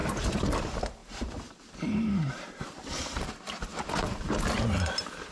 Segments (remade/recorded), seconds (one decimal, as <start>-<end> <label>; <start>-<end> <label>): 0.0-0.6 remade; 0.6-1.0 recorded; 1.0-3.3 remade; 3.3-3.7 recorded; 3.7-4.3 remade; 4.3-5.3 recorded